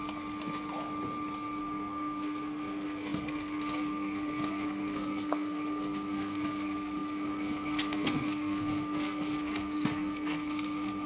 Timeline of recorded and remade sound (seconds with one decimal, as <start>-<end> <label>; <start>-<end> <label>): 0.0-1.6 recorded; 1.6-11.1 remade

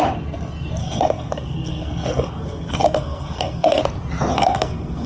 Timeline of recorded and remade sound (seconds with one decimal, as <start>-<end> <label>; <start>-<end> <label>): 0.0-0.8 recorded; 0.8-3.8 remade; 3.8-4.3 recorded; 4.3-5.1 remade

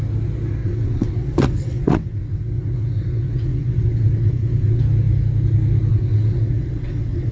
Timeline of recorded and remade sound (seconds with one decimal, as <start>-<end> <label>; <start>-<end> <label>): 0.0-0.6 recorded; 0.6-4.8 remade; 4.8-5.9 recorded; 5.9-7.3 remade

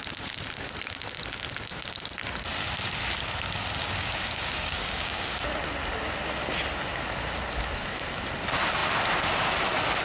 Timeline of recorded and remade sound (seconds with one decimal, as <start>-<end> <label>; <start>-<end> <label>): 0.0-3.8 recorded; 3.8-5.4 remade; 5.4-10.0 recorded

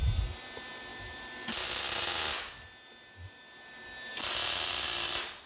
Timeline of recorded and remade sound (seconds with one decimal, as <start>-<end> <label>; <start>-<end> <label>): 0.0-5.5 recorded